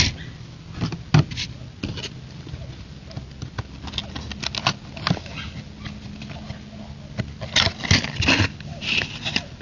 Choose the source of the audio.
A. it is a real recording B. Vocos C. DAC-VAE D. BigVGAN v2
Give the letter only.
A